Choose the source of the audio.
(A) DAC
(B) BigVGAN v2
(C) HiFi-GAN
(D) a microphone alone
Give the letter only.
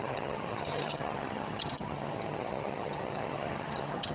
C